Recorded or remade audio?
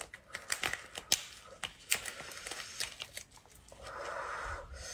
recorded